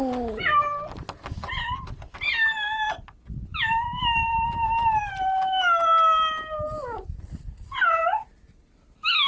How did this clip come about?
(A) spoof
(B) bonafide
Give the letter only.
B